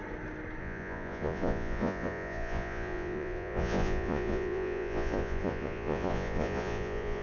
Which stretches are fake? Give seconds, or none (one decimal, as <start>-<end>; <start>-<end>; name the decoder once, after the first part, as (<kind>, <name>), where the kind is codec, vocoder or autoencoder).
0.6-7.2 (vocoder, Vocos)